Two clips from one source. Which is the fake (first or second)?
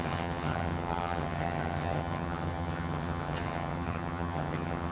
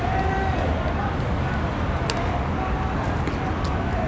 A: first